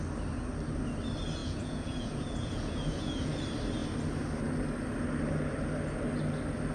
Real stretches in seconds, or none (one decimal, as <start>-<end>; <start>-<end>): 0.0-1.4; 3.4-6.7